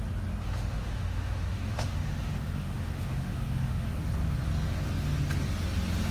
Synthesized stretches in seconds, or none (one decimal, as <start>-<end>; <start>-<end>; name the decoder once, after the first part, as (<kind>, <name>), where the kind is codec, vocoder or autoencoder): 0.4-4.0 (autoencoder, DAC-VAE)